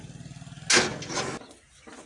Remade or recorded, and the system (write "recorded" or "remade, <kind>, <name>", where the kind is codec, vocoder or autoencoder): recorded